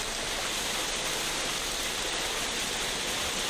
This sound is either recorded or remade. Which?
recorded